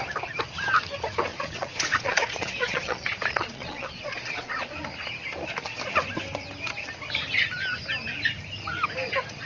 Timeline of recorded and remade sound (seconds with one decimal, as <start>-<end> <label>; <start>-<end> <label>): 0.0-1.3 recorded; 1.3-4.7 remade; 4.7-9.5 recorded